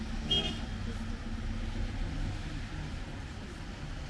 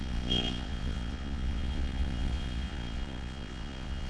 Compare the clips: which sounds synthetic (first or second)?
second